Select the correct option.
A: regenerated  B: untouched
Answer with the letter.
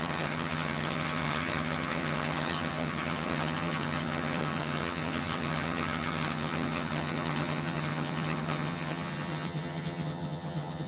A